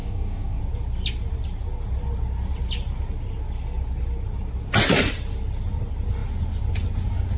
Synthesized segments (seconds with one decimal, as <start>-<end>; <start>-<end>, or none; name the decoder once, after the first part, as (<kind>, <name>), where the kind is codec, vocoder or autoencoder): 0.0-0.6 (codec, DAC)

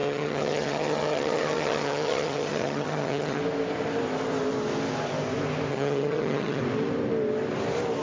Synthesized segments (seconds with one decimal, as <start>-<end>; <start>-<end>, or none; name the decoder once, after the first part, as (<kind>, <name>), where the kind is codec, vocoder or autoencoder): 0.0-3.4 (vocoder, HiFi-GAN); 5.7-6.6

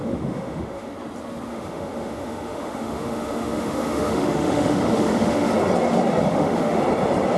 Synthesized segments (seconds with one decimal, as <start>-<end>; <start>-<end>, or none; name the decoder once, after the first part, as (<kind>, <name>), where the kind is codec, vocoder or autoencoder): 0.0-0.9 (autoencoder, DAC-VAE); 1.5-5.5; 6.3-6.8

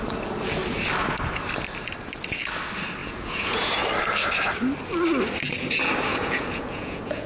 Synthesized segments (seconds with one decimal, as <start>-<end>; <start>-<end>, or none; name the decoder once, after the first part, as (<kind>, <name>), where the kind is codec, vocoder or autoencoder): 3.0-3.7 (vocoder, Vocos); 6.1-7.3

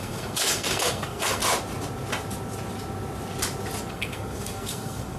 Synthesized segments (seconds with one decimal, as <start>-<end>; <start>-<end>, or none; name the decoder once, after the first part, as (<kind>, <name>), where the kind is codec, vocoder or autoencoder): 0.0-1.4 (codec, SNAC); 3.9-5.2